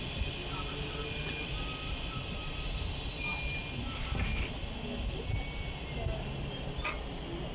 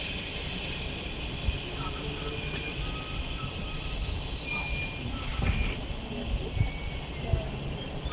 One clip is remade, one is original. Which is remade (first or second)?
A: second